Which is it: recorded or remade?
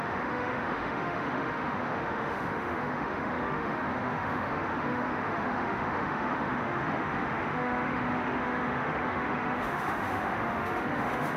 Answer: remade